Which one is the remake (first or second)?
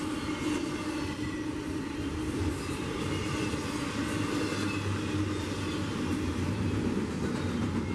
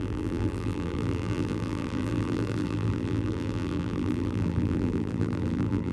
second